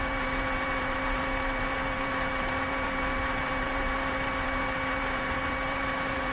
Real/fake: fake